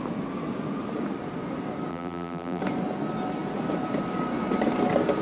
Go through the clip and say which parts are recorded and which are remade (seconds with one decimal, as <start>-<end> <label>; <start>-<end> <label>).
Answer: 0.0-1.9 recorded; 1.9-2.6 remade; 2.6-5.2 recorded